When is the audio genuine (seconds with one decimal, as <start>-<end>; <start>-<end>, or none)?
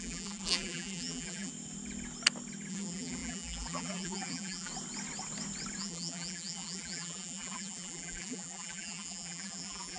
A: 1.5-2.7; 4.7-5.8